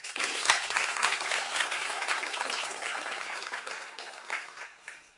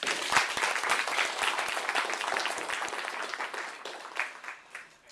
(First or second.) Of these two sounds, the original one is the second